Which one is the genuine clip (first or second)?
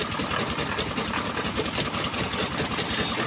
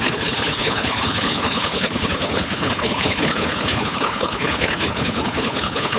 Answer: first